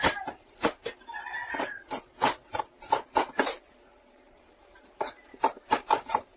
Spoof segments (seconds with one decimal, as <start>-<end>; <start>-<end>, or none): 0.0-0.8; 4.1-6.4